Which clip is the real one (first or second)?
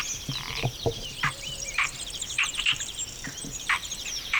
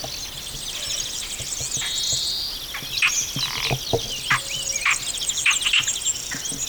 second